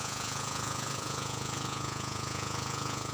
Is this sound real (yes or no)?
no